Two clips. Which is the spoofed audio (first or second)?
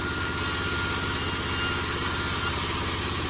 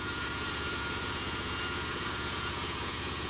second